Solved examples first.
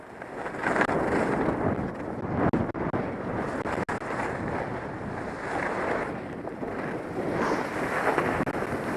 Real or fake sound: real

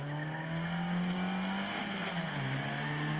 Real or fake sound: real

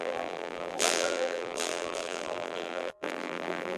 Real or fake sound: fake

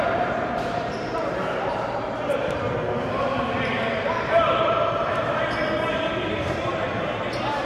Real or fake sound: fake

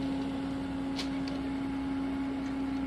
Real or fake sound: real